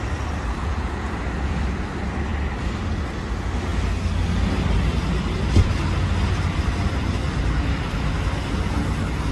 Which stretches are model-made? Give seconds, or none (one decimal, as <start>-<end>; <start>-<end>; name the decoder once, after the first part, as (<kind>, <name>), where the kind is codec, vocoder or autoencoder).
0.6-1.1 (vocoder, Vocos)